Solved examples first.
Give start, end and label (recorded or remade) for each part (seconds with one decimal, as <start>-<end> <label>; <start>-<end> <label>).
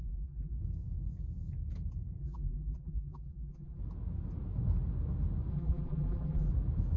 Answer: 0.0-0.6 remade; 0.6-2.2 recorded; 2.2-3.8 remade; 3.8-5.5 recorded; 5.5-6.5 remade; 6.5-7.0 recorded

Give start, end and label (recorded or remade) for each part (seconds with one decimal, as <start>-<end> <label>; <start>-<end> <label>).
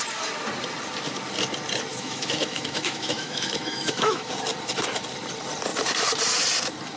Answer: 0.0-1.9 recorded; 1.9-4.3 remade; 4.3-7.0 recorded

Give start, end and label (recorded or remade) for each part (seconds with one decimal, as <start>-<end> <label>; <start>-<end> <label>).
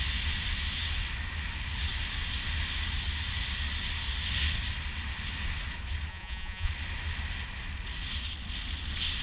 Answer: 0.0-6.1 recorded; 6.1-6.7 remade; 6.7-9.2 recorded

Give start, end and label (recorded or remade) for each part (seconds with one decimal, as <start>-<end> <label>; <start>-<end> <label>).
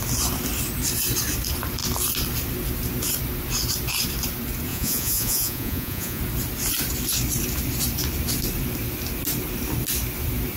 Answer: 0.0-4.7 recorded; 4.7-6.2 remade; 6.2-10.6 recorded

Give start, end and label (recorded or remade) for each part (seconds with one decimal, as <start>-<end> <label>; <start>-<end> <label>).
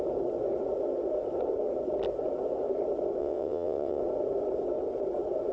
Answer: 0.0-3.2 recorded; 3.2-4.0 remade; 4.0-5.5 recorded